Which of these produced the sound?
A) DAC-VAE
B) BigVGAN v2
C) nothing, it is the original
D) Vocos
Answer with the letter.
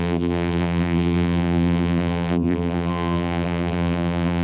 B